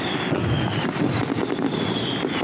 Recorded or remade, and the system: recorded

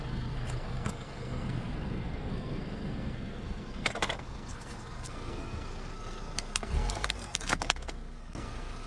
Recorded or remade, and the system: remade, codec, SNAC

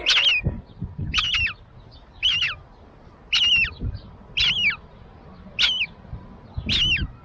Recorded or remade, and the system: recorded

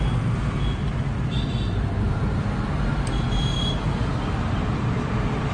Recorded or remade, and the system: recorded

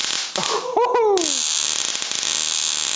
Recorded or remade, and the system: recorded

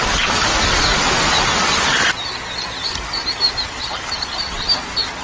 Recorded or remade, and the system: recorded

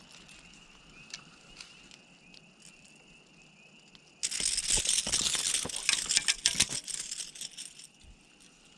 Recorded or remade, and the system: recorded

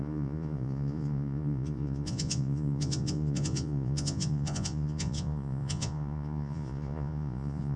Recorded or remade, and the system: remade, vocoder, Vocos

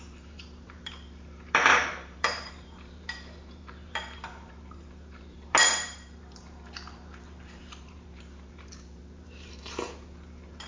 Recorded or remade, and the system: remade, vocoder, BigVGAN v2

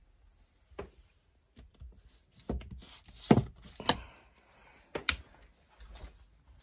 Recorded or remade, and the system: recorded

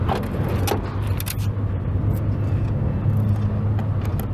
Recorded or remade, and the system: recorded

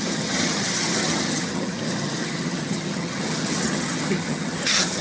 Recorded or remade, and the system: remade, vocoder, HiFi-GAN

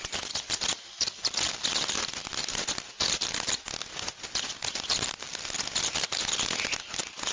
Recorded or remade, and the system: recorded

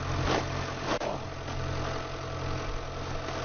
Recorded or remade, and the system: recorded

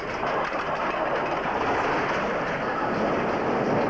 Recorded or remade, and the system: recorded